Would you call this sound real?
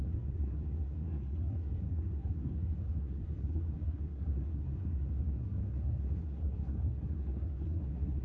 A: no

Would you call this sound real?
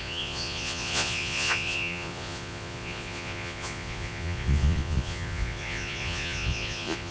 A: no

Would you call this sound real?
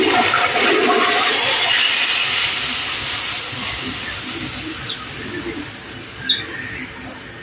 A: yes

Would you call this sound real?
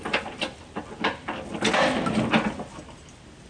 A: yes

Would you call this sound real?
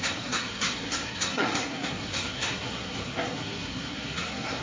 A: no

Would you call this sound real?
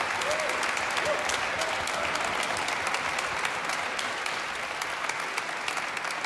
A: yes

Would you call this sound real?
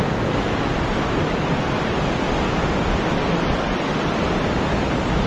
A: yes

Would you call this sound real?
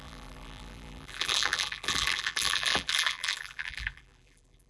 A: no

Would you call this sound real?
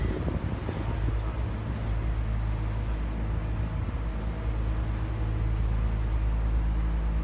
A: yes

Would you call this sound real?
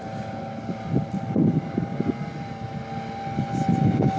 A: yes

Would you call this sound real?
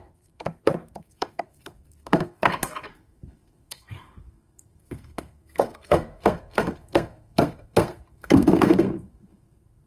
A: no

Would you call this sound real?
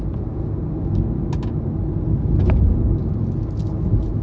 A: yes